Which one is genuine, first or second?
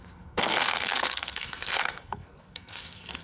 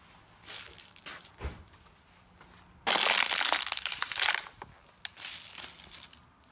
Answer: second